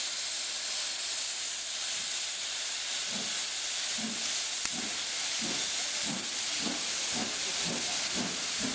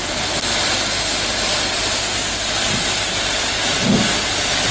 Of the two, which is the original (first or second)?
second